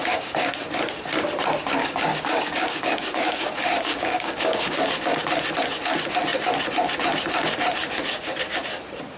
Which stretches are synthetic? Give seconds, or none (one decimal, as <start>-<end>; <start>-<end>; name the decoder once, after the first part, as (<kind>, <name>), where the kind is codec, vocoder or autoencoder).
0.0-0.5 (codec, DAC); 1.8-5.2